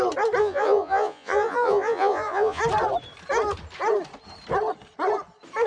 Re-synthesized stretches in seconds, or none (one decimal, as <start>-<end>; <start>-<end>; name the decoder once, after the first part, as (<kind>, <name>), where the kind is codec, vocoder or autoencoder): 0.4-2.6 (vocoder, Vocos)